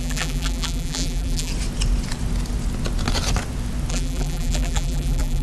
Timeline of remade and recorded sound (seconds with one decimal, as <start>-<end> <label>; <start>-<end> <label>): 0.0-1.5 remade; 1.5-3.9 recorded; 3.9-5.4 remade